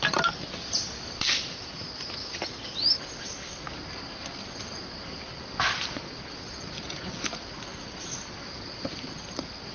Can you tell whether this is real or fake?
real